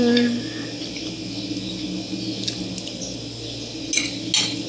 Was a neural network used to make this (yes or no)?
no